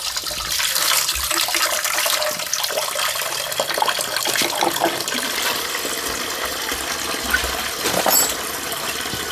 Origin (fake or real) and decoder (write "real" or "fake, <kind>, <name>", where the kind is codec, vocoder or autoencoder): real